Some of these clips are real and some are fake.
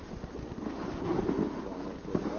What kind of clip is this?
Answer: real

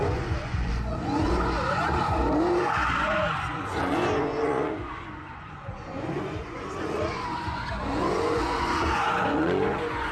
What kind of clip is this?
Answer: fake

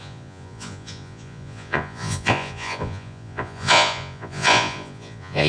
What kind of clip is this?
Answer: fake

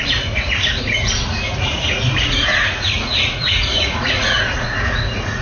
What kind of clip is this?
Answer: fake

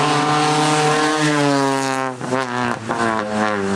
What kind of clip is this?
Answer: real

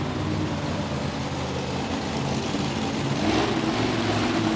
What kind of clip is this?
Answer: real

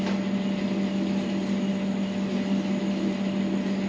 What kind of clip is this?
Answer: real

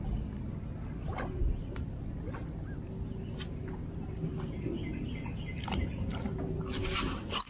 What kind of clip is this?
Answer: real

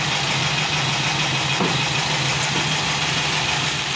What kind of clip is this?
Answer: real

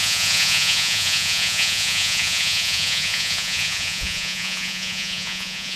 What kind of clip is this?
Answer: fake